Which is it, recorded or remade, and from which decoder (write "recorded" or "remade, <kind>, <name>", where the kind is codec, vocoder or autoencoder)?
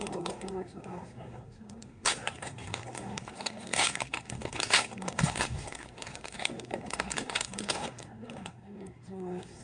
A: remade, codec, SNAC